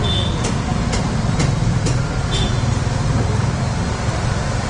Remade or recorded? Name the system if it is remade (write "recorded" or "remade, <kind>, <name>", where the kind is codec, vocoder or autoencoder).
recorded